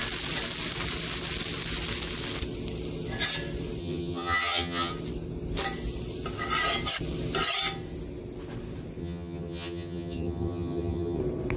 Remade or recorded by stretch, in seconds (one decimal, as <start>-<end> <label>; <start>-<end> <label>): 0.0-3.8 recorded; 3.8-4.9 remade; 4.9-9.0 recorded; 9.0-11.2 remade; 11.2-11.6 recorded